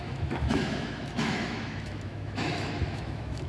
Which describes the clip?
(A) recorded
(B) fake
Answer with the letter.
B